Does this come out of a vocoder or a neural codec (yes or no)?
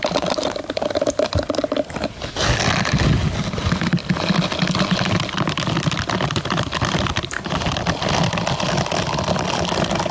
no